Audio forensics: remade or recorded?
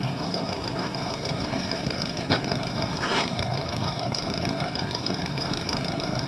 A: remade